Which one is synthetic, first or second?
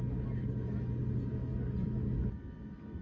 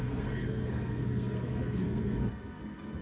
second